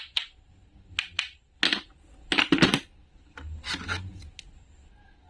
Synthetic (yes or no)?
no